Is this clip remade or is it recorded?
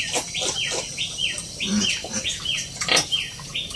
recorded